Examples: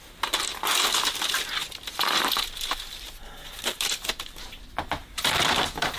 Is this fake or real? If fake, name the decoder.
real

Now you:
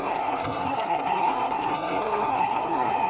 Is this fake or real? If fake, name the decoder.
fake, codec, SNAC